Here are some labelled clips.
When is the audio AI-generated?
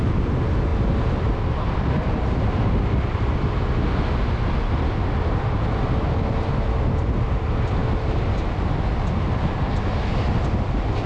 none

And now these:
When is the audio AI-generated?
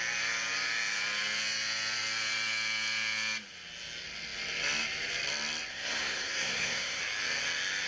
5.7-7.0 (codec, SNAC)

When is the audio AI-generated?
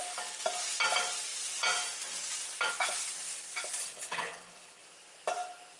3.8-4.8 (codec, HILCodec)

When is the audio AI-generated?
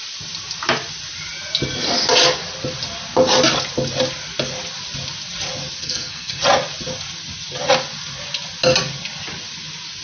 5.8-6.4 (codec, SNAC)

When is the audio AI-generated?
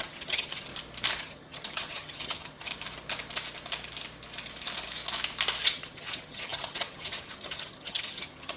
0.0-0.7 (vocoder, HiFi-GAN); 1.2-2.7; 5.6-8.6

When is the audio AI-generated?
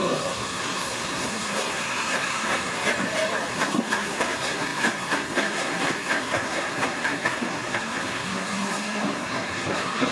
0.0-2.9 (codec, SNAC); 3.5-10.1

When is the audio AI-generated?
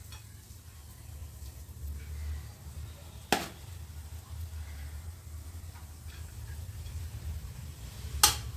none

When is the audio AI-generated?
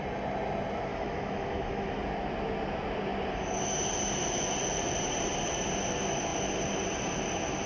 0.9-2.0 (autoencoder, DAC-VAE)